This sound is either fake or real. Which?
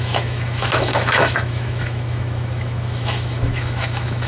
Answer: fake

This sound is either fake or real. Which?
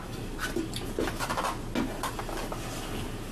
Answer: real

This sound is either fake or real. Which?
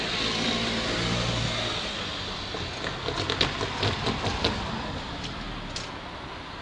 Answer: real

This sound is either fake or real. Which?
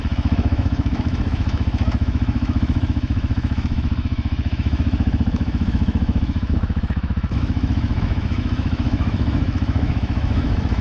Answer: fake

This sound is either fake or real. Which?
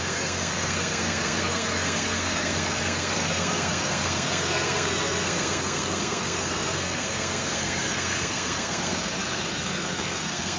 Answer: fake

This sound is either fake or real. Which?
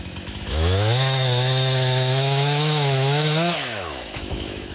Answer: fake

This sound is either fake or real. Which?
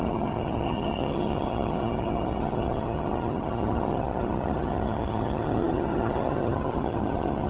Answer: fake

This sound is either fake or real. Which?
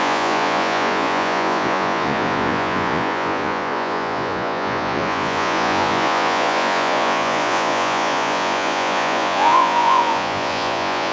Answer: fake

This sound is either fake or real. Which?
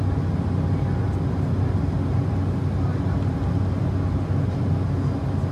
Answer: real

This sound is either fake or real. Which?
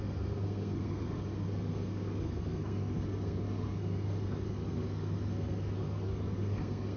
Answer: fake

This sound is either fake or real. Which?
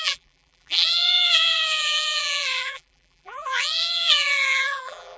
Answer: fake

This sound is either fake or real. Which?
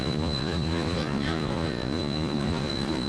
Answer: fake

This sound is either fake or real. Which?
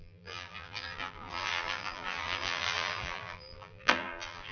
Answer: fake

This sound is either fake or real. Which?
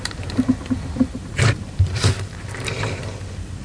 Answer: fake